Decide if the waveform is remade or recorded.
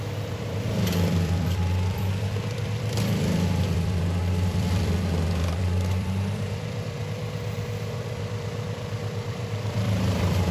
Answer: remade